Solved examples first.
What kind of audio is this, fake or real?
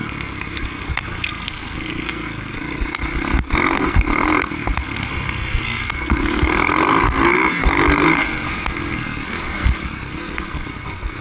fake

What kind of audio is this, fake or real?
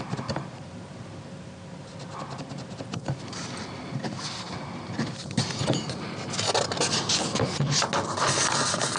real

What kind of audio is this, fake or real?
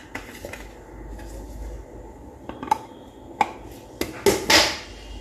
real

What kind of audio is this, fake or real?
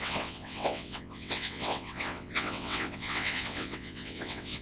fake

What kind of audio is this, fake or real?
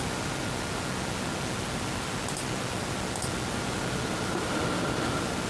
real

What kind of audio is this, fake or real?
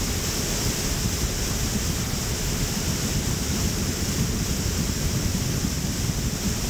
real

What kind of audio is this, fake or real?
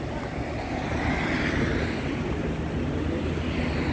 real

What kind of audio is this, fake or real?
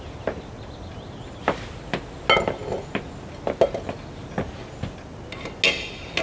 real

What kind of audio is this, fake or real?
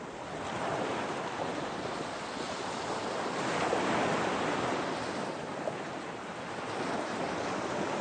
real